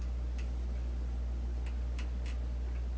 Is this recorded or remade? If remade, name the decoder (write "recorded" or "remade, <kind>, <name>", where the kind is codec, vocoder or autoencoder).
recorded